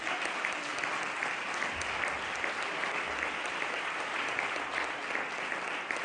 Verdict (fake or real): real